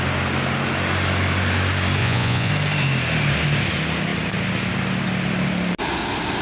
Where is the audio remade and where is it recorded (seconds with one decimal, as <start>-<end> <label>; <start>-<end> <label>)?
0.0-2.0 recorded; 2.0-2.5 remade; 2.5-6.4 recorded